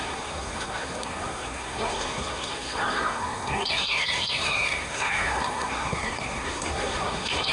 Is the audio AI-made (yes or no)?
yes